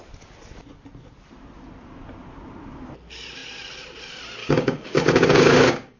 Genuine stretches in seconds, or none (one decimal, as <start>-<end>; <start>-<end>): 0.0-4.4